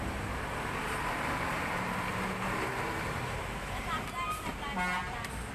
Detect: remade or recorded recorded